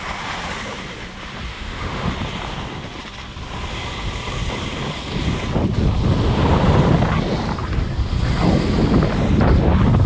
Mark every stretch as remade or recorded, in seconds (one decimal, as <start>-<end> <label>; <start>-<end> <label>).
0.0-1.5 recorded; 1.5-2.1 remade; 2.1-10.1 recorded